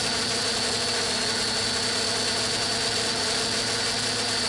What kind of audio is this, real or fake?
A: real